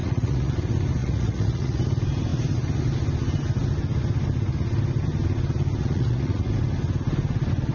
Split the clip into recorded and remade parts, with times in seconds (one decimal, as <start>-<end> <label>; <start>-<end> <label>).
0.0-0.5 remade; 0.5-1.0 recorded; 1.0-1.8 remade; 1.8-5.8 recorded; 5.8-6.5 remade; 6.5-7.7 recorded

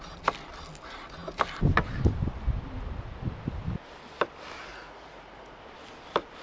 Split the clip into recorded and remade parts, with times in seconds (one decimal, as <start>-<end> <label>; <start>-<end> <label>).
0.0-4.7 recorded; 4.7-5.6 remade; 5.6-6.4 recorded

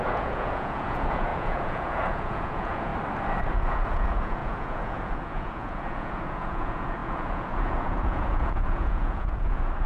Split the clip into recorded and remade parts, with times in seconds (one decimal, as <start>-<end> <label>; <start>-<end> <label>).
0.0-2.9 remade; 2.9-3.5 recorded; 3.5-9.9 remade

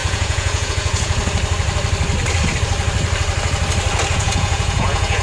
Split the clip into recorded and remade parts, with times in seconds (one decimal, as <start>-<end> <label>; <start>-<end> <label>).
0.0-1.2 remade; 1.2-4.1 recorded; 4.1-5.2 remade

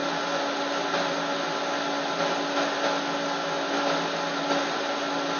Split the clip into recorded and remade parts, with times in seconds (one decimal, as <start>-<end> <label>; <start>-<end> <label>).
0.0-5.4 recorded

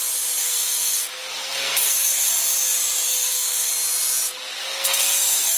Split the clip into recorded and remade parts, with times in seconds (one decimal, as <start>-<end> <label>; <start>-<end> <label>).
0.0-0.4 recorded; 0.4-2.3 remade; 2.3-3.1 recorded; 3.1-3.7 remade; 3.7-4.6 recorded; 4.6-5.6 remade

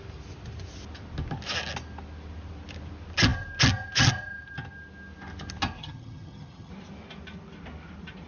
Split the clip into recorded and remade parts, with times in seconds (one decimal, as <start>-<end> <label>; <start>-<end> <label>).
0.0-5.8 recorded; 5.8-6.7 remade; 6.7-8.3 recorded

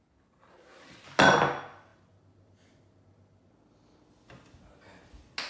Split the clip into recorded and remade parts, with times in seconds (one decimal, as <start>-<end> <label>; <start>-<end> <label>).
0.0-5.5 recorded